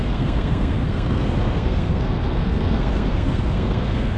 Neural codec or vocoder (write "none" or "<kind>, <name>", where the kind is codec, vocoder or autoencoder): codec, SNAC